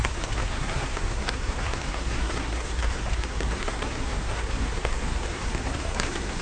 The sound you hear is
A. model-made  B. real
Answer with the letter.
A